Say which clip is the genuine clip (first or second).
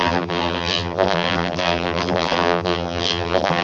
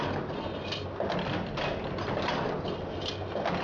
second